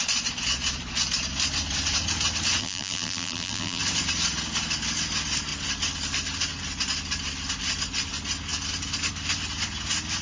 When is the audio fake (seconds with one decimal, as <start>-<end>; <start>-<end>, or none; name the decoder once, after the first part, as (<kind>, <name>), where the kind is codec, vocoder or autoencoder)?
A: 2.6-3.8 (vocoder, BigVGAN v2)

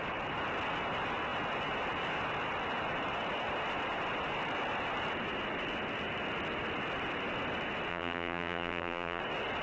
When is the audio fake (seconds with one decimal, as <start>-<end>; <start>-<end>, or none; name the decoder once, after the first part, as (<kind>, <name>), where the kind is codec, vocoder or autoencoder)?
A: 7.9-9.2 (vocoder, BigVGAN v2)

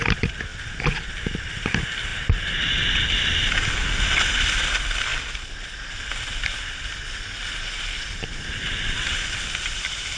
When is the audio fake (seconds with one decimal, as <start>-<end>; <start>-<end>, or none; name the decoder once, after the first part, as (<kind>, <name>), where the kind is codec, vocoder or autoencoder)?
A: 0.0-0.5 (vocoder, BigVGAN v2); 1.1-5.1; 8.2-10.2